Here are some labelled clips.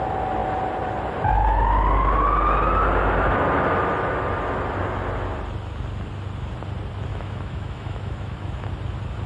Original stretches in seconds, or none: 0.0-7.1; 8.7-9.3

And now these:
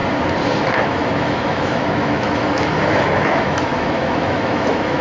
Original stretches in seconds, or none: 0.0-0.8

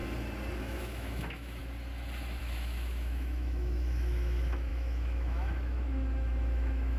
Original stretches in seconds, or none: 0.0-0.6; 1.6-2.4

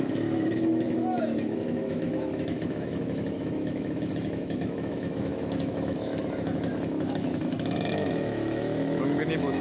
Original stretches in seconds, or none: none

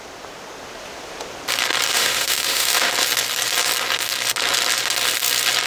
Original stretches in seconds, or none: 0.0-1.9; 2.9-5.7

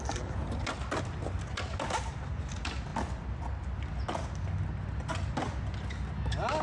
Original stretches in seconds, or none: 0.0-6.6